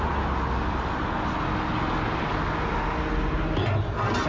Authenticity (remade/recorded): recorded